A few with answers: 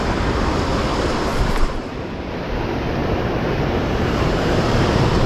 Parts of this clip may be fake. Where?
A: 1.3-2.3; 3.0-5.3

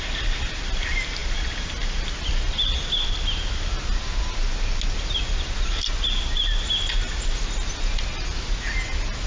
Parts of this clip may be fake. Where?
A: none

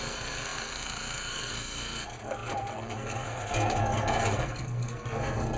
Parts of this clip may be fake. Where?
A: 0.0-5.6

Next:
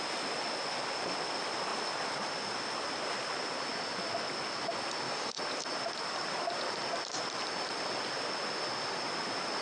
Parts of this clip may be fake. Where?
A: none

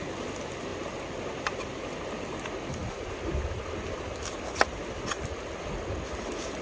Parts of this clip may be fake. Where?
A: none

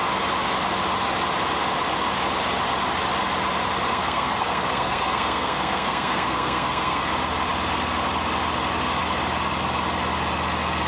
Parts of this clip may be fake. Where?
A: 3.9-7.1